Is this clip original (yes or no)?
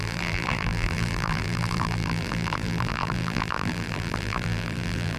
no